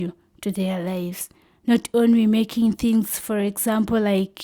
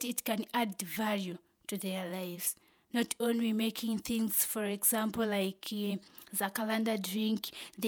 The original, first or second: first